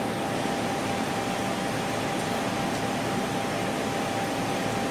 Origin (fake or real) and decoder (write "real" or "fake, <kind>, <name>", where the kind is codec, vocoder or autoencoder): real